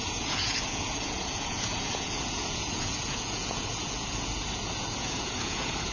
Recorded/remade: remade